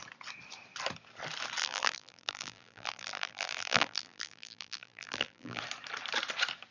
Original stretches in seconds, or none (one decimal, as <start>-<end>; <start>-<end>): 0.0-1.6; 5.6-6.7